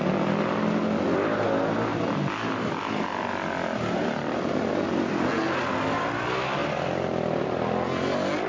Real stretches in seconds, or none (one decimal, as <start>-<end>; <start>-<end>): 0.0-8.5